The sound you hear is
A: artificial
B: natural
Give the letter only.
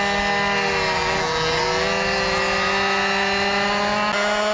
B